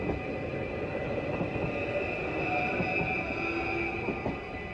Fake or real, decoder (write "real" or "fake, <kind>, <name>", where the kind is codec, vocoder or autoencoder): real